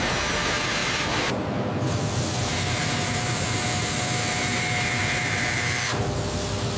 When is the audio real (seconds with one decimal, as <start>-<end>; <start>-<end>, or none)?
0.0-6.8